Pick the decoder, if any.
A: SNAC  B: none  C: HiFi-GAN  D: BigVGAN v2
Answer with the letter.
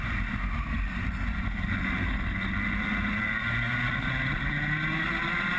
B